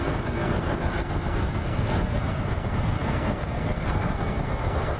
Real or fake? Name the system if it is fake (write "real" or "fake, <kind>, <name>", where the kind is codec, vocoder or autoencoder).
fake, codec, SNAC